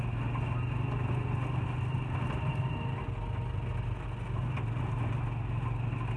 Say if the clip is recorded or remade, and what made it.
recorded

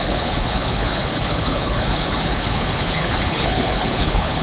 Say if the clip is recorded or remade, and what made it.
remade, codec, HILCodec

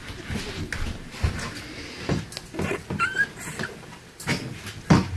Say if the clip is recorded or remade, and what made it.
recorded